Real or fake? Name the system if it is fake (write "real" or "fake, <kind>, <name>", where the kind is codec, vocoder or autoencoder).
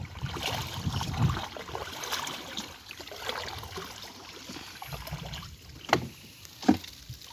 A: real